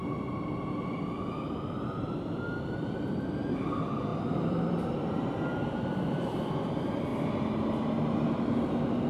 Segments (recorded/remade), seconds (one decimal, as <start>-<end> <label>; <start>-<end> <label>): 0.0-4.1 recorded; 4.1-4.7 remade; 4.7-9.1 recorded